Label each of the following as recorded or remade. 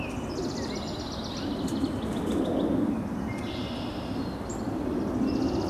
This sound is recorded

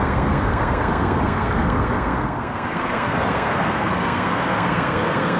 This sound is remade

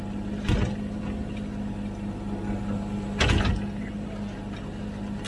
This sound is recorded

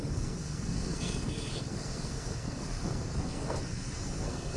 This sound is remade